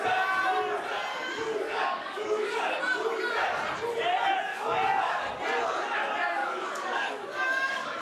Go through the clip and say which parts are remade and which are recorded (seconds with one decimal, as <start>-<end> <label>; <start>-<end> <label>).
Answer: 0.0-1.1 recorded; 1.1-2.8 remade; 2.8-4.5 recorded; 4.5-5.3 remade; 5.3-6.4 recorded; 6.4-8.0 remade